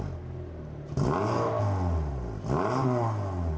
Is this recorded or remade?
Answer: recorded